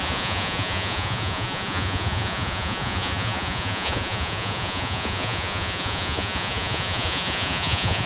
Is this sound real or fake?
fake